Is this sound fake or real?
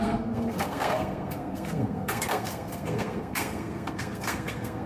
fake